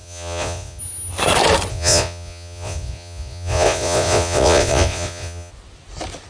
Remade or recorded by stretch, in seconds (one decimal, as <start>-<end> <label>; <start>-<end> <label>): 0.0-0.8 remade; 0.8-1.7 recorded; 1.7-5.5 remade; 5.5-6.3 recorded